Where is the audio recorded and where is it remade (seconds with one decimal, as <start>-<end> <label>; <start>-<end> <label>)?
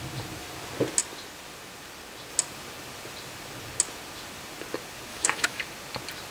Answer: 0.0-5.1 recorded; 5.1-5.6 remade; 5.6-6.3 recorded